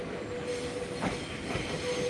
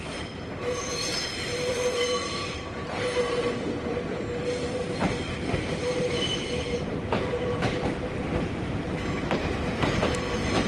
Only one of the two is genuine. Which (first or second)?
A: first